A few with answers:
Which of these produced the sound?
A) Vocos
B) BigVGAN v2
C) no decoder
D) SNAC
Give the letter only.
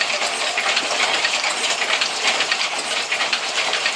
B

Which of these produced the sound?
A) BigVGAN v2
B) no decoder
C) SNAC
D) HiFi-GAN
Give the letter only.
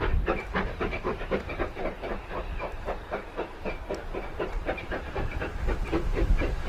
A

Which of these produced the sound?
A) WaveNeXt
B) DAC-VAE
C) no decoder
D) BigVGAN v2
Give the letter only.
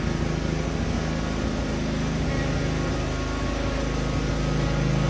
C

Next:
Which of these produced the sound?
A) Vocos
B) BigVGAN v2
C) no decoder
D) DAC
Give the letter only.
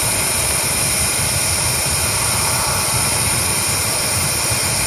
C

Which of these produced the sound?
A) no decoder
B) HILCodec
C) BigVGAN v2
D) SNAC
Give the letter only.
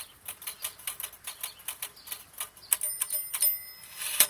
A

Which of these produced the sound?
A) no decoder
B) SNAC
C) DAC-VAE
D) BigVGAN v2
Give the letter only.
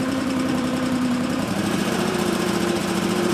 D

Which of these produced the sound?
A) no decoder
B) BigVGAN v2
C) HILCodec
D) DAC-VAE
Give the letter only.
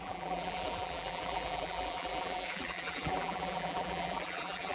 B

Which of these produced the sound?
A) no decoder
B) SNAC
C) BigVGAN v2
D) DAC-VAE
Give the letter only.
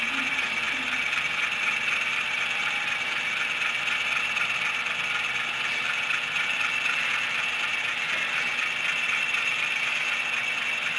A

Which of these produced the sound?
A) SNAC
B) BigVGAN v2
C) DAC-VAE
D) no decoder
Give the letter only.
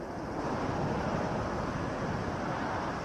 D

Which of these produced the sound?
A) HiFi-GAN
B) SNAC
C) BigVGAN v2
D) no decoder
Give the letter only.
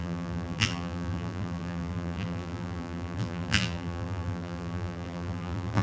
C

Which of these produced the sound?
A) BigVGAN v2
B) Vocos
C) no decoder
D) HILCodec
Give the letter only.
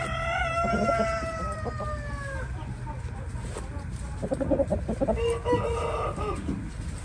C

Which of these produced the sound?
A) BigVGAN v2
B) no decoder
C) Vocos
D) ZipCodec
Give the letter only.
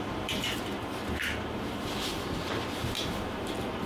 A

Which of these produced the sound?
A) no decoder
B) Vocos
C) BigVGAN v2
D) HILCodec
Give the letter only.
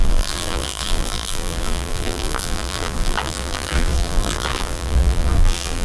C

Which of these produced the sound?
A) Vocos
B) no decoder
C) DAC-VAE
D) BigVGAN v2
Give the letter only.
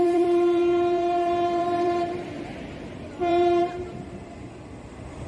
D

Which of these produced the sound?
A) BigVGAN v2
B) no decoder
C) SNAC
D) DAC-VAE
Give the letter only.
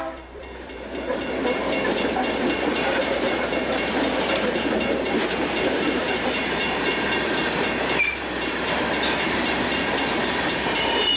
A